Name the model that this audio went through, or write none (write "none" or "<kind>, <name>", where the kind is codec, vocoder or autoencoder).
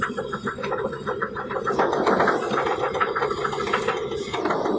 none